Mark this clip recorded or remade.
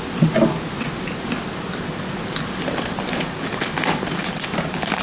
recorded